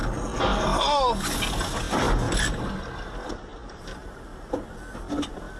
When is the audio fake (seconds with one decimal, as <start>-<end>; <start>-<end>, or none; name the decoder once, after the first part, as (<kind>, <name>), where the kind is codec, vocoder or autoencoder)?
3.6-4.5 (vocoder, BigVGAN v2)